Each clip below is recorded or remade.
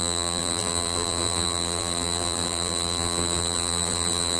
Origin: remade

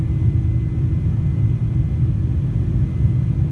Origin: recorded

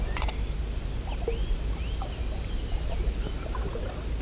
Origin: recorded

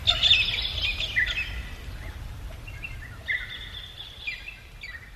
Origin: recorded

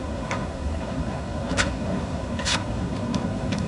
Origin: remade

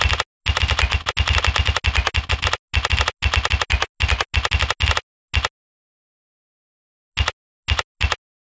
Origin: recorded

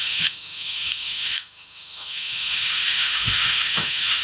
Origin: remade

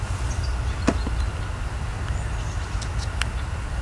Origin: recorded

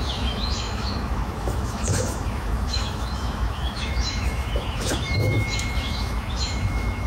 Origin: remade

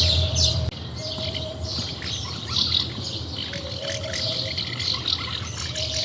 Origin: recorded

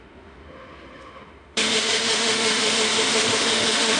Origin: remade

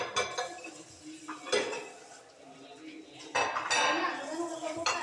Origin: recorded